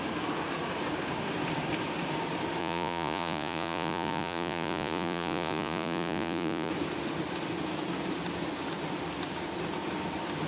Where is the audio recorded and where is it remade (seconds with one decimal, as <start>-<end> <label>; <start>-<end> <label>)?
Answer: 0.0-2.6 recorded; 2.6-6.7 remade; 6.7-10.5 recorded